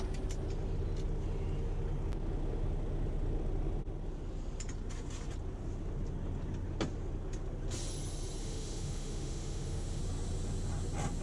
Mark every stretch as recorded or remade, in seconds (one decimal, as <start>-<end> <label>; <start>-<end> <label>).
0.0-8.4 recorded; 8.4-10.0 remade; 10.0-11.2 recorded